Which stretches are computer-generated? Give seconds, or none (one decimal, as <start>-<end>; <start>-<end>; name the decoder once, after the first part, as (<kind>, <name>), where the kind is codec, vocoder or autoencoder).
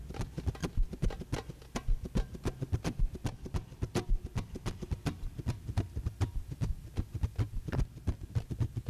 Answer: 0.0-0.6 (vocoder, BigVGAN v2); 4.8-6.7; 8.5-8.9